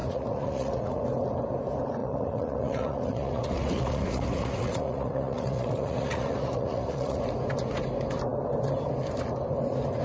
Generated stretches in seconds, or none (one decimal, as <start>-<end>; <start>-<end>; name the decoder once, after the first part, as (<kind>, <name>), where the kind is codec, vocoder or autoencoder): 0.0-1.0 (vocoder, Vocos); 2.0-7.2